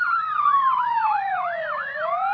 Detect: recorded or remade remade